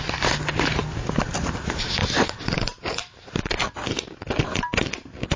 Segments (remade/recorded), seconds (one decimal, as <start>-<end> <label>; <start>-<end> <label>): 0.0-0.8 remade; 0.8-1.3 recorded; 1.3-5.4 remade